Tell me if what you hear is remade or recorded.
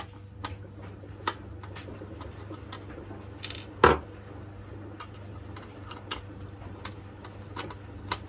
recorded